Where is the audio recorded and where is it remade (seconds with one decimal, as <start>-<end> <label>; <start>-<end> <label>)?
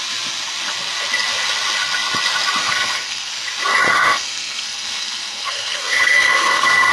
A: 0.0-2.6 recorded; 2.6-3.3 remade; 3.3-3.9 recorded; 3.9-6.9 remade